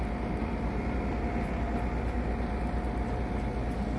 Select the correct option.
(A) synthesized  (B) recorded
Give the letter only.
B